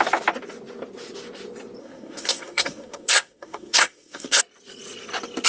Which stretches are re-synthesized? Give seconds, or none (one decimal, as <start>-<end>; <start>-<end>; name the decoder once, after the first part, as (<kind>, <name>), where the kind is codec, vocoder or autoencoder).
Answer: 1.8-4.4 (codec, SNAC)